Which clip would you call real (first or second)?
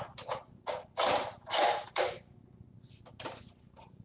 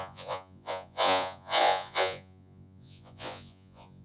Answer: first